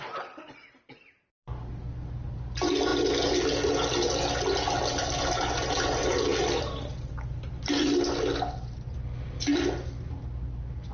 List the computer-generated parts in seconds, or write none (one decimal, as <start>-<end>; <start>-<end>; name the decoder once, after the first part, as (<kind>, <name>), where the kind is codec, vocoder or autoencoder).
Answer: none

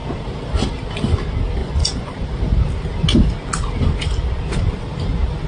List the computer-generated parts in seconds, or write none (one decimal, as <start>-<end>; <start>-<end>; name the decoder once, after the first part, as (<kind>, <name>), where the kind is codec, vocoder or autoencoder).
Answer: 1.6-2.3 (vocoder, Vocos)

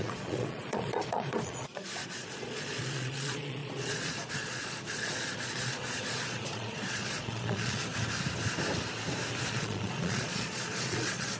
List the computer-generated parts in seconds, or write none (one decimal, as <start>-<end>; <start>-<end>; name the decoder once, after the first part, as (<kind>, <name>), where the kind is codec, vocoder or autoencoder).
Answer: 0.0-7.8 (vocoder, Vocos); 9.5-11.4

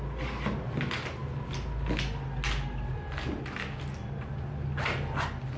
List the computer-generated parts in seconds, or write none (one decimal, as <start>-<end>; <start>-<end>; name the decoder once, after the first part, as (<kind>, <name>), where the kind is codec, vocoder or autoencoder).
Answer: none

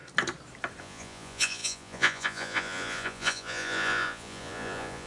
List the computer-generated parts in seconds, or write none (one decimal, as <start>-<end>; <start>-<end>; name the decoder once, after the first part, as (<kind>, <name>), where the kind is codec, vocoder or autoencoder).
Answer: 0.8-5.1 (vocoder, Vocos)

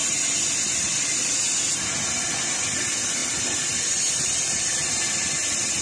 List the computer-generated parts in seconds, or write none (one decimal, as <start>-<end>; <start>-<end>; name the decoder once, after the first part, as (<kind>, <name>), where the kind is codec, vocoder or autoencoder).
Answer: none

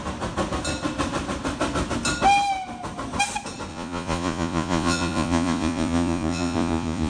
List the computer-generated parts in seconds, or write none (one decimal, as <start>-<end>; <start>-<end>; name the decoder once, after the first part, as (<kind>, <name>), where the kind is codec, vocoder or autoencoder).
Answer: 3.7-7.1 (vocoder, Vocos)

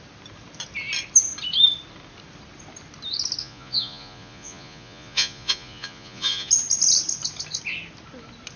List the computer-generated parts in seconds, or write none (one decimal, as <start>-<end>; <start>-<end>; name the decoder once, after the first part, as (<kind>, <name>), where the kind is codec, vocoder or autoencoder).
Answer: 3.4-6.5 (vocoder, Vocos)